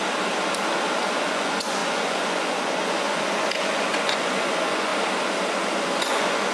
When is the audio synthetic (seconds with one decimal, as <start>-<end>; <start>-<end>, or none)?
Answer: 1.0-4.9; 5.6-6.5